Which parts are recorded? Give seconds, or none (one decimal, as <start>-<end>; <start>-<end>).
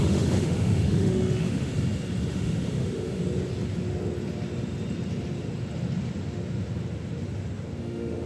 1.7-2.3; 3.2-7.8